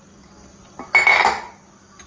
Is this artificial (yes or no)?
no